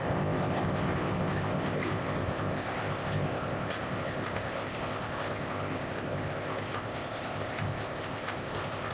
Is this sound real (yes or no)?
no